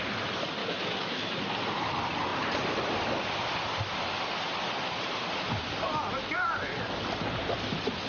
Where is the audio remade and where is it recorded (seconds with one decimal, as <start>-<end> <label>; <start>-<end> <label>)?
0.0-0.6 recorded; 0.6-1.4 remade; 1.4-8.1 recorded